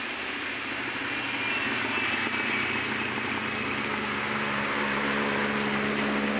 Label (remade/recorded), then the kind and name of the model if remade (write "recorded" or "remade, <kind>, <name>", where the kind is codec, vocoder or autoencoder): recorded